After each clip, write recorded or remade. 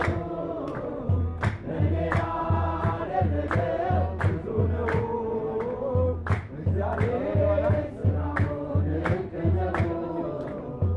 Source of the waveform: recorded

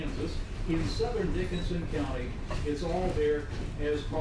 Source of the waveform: recorded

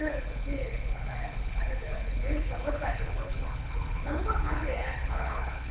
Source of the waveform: remade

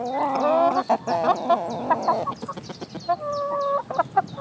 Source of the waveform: recorded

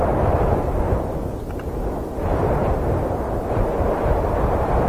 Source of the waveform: recorded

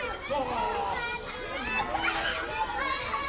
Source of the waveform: recorded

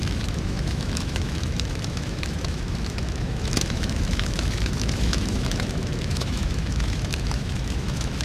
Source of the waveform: remade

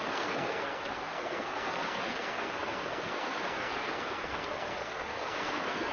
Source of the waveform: remade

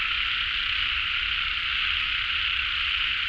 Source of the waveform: recorded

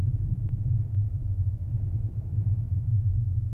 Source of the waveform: remade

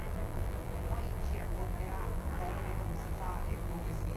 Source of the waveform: remade